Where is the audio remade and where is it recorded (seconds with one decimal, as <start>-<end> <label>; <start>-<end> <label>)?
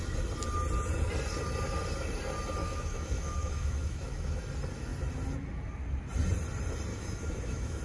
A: 0.0-2.6 recorded; 2.6-4.4 remade; 4.4-6.9 recorded; 6.9-7.8 remade